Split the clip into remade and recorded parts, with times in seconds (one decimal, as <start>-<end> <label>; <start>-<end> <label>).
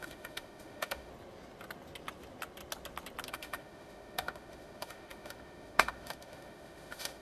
0.0-1.1 remade; 1.1-3.3 recorded; 3.3-7.2 remade